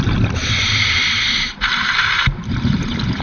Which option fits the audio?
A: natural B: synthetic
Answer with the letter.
A